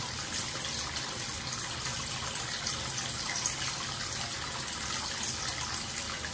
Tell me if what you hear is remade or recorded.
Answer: recorded